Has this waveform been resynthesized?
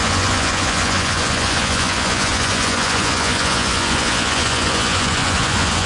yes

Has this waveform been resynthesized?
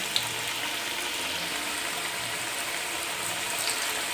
no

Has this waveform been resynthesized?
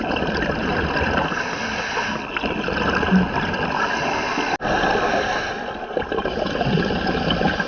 no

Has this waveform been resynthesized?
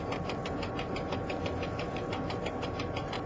no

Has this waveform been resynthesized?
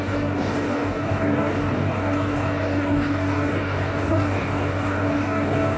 yes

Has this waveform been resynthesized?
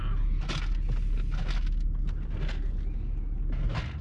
no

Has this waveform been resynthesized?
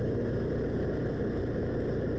no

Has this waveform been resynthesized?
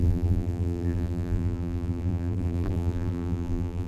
yes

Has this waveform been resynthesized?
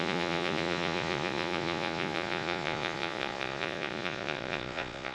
yes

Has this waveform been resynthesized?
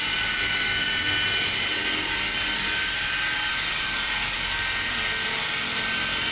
no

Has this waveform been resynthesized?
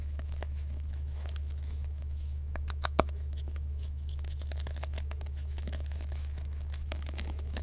yes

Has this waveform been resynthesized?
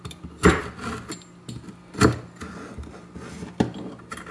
no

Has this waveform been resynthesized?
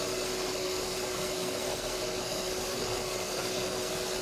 yes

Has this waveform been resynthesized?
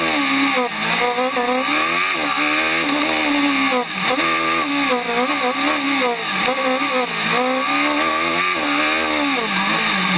no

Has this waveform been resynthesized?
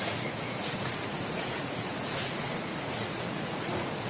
yes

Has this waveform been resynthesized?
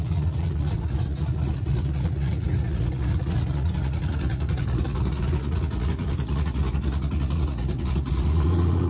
yes